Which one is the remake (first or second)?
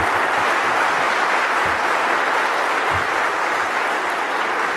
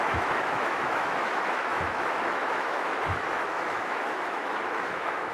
second